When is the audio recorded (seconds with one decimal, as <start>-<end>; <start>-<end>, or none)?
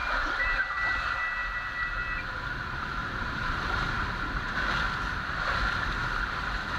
0.6-3.0; 4.0-6.8